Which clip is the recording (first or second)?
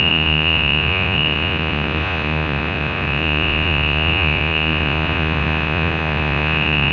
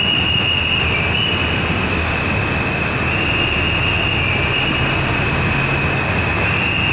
second